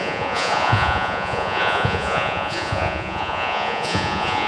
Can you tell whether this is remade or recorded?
remade